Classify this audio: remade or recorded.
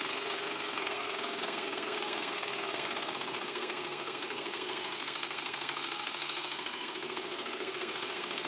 remade